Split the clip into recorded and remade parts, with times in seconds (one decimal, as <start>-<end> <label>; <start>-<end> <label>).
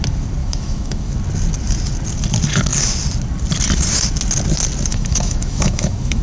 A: 0.0-0.4 recorded; 0.4-1.1 remade; 1.1-4.9 recorded; 4.9-6.2 remade